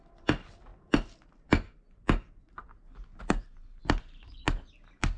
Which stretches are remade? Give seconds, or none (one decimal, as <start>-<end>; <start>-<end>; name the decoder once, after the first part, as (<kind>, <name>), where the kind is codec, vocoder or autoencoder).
none